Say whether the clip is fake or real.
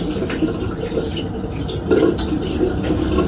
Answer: real